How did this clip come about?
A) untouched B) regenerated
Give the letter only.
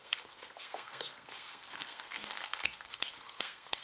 B